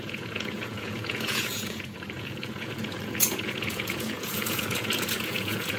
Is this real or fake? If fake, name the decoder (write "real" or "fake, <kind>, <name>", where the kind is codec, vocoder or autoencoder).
fake, vocoder, Vocos